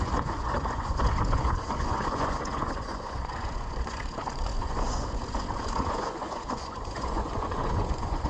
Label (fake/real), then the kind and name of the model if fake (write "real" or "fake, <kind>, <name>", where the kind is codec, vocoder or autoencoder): fake, vocoder, Vocos